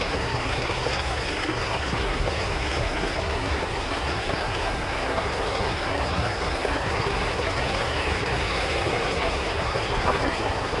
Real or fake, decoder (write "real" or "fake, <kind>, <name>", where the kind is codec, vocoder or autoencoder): fake, codec, SNAC